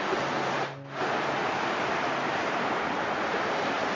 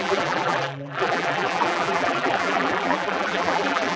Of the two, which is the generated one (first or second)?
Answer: second